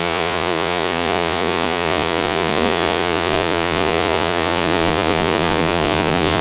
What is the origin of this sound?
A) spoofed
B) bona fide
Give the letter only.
A